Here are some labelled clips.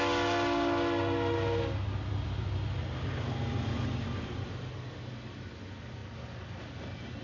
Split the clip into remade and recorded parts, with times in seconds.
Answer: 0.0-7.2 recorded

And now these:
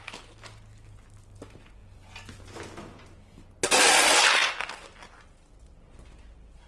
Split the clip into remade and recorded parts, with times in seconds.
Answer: 0.0-6.7 recorded

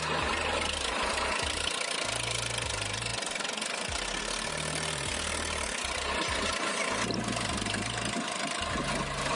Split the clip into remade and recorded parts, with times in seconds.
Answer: 0.0-9.4 recorded